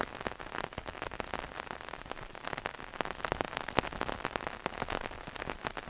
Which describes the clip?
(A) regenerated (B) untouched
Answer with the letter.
B